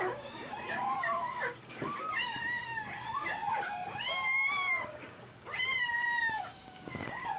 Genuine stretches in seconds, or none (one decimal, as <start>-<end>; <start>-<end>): none